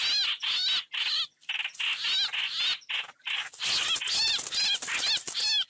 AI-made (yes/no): no